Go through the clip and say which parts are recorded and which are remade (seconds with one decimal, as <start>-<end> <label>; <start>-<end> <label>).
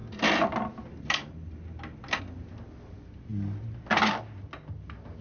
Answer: 0.0-5.2 recorded